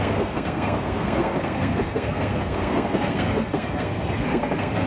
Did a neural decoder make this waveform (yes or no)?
yes